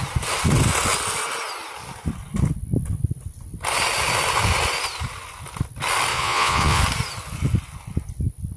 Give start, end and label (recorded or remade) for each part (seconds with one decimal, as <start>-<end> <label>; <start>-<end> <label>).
0.0-6.1 recorded; 6.1-6.8 remade; 6.8-8.6 recorded